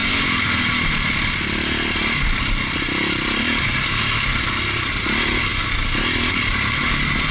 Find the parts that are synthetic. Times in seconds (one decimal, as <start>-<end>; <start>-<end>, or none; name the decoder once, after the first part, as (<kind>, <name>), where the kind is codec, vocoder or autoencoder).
none